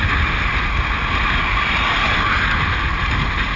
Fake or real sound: real